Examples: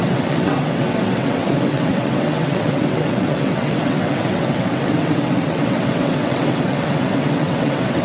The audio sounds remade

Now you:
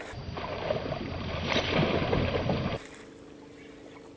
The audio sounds recorded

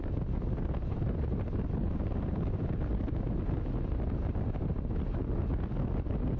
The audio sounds recorded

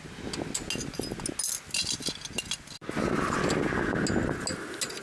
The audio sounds recorded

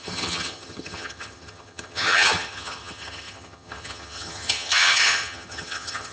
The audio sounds remade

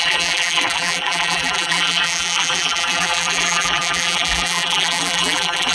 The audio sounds remade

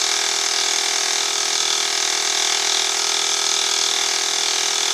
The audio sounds recorded